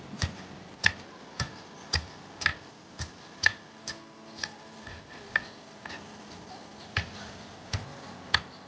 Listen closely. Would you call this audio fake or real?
real